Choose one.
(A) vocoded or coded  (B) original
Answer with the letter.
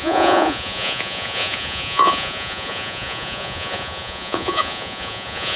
A